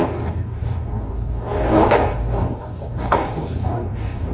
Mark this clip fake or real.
fake